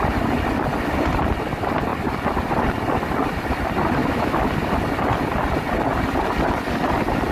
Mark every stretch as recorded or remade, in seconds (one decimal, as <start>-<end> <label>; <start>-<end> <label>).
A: 0.0-4.0 recorded; 4.0-4.5 remade; 4.5-7.3 recorded